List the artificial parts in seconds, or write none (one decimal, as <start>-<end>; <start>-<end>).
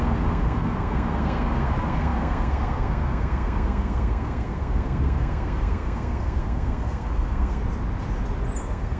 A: 0.0-7.6; 8.6-9.0